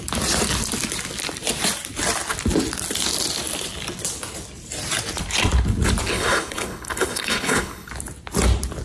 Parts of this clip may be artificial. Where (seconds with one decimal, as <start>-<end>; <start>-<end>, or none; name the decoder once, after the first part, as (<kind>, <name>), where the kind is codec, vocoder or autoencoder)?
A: 6.1-7.9 (codec, HILCodec)